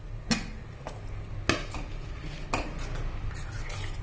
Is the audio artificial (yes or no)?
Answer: no